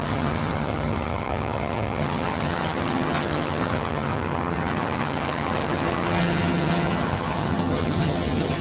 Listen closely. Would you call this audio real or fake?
fake